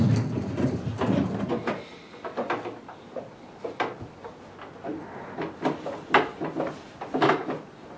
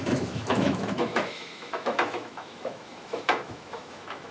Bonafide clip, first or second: first